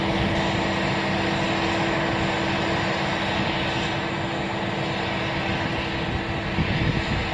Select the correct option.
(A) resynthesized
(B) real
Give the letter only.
B